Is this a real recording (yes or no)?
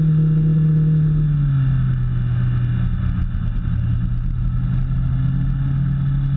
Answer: yes